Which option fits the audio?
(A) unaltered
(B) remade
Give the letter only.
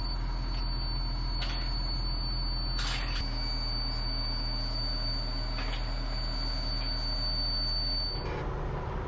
A